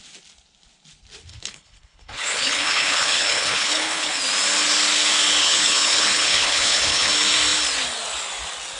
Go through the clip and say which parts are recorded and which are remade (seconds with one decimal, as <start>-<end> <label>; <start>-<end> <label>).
0.0-1.3 recorded; 1.3-4.2 remade; 4.2-5.4 recorded; 5.4-7.1 remade; 7.1-8.8 recorded